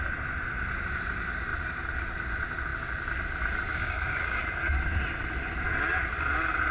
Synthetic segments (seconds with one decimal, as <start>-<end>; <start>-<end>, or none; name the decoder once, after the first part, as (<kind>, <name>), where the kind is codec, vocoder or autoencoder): 3.7-4.4 (codec, DAC)